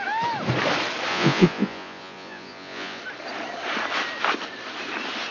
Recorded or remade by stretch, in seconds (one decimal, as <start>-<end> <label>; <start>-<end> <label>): 0.0-1.1 recorded; 1.1-3.0 remade; 3.0-5.3 recorded